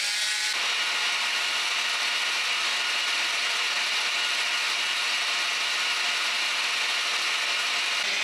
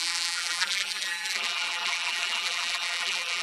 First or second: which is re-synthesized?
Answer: second